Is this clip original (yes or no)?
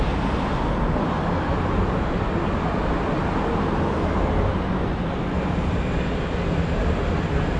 yes